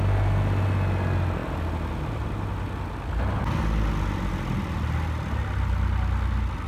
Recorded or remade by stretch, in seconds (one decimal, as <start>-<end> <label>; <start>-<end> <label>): 0.0-6.7 recorded